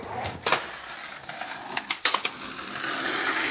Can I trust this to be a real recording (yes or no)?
yes